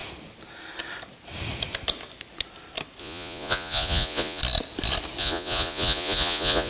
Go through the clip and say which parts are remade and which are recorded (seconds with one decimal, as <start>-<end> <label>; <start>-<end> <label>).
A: 0.0-3.0 recorded; 3.0-4.4 remade; 4.4-5.2 recorded; 5.2-6.7 remade